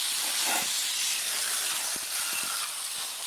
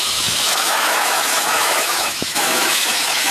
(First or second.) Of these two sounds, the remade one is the second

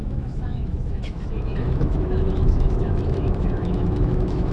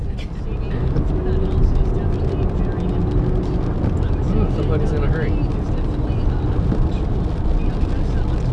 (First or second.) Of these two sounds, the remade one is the first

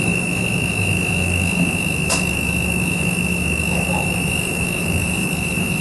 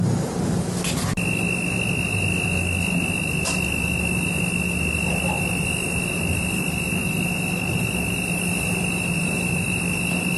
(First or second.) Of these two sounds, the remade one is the first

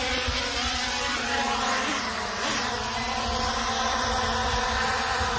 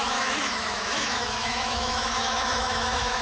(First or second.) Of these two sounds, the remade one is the second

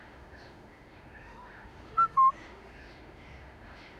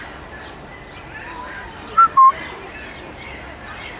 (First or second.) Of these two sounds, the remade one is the first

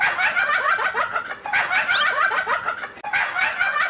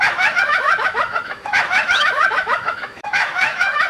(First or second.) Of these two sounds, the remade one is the second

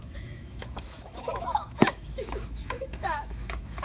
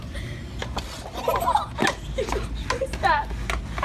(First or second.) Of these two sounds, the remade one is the first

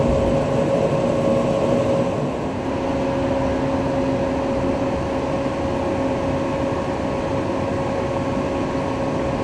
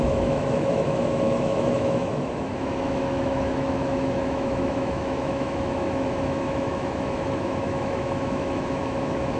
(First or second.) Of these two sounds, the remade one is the second